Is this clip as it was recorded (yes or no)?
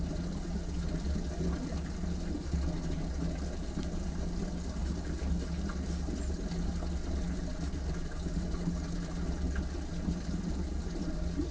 yes